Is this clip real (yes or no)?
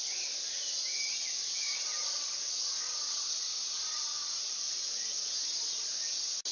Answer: yes